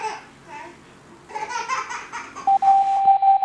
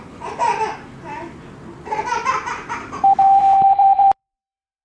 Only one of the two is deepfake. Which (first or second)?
second